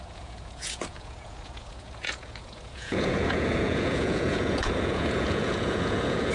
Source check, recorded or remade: remade